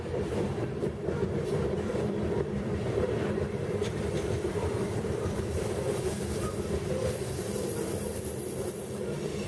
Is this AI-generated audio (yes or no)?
yes